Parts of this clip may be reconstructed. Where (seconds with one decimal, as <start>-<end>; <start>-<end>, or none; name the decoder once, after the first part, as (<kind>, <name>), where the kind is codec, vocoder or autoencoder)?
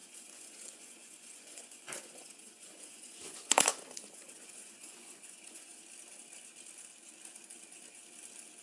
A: 0.0-5.7 (vocoder, Vocos)